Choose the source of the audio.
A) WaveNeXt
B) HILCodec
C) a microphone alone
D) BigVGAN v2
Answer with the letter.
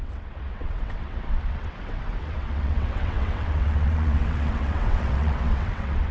A